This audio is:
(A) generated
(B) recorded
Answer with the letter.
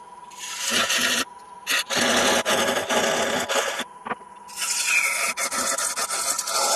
B